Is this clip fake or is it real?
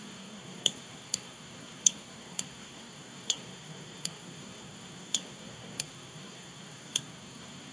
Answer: fake